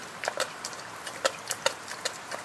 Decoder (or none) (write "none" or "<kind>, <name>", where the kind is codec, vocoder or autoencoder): none